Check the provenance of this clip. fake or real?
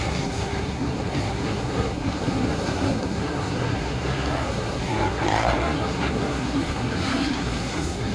fake